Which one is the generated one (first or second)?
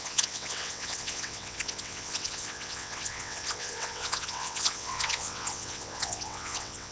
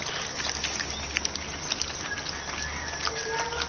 first